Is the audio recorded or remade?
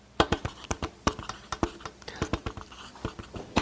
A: remade